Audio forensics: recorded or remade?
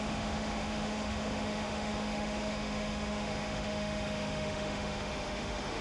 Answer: remade